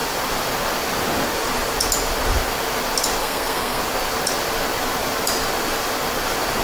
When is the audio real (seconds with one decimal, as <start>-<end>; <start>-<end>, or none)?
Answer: 0.0-3.2; 3.8-6.6